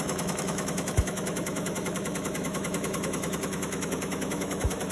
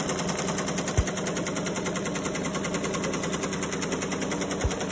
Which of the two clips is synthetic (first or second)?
first